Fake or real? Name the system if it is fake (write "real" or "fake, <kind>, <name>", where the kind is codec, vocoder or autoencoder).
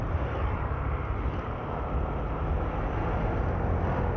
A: real